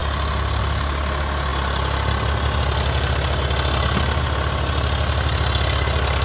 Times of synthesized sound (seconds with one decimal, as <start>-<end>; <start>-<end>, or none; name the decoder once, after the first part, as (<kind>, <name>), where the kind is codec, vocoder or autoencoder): none

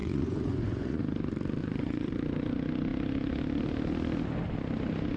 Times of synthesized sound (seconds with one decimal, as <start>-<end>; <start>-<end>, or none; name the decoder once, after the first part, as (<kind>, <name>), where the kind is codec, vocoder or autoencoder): 0.0-1.0 (vocoder, Vocos); 1.6-2.1

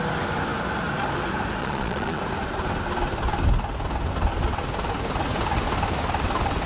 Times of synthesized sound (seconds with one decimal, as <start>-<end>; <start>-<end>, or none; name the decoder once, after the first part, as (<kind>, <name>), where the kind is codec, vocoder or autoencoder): 1.6-2.2 (vocoder, Vocos)

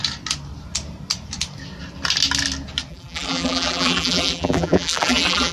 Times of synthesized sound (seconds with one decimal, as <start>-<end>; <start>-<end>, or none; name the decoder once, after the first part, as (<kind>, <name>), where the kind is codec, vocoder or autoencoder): 2.9-5.5 (vocoder, BigVGAN v2)

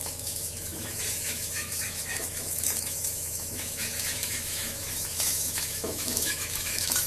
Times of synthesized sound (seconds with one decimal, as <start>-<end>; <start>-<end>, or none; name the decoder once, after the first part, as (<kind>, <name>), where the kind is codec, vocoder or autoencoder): 0.0-7.1 (autoencoder, DAC-VAE)

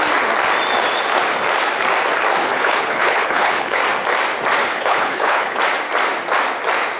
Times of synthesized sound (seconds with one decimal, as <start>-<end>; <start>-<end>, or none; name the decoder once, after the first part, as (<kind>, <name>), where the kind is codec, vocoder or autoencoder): 2.4-3.8 (codec, HILCodec); 4.6-5.6

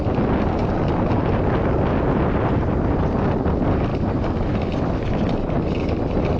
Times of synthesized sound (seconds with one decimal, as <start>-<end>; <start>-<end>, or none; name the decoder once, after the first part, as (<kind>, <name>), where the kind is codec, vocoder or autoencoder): none